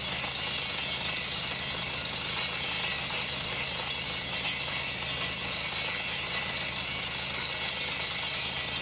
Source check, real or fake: real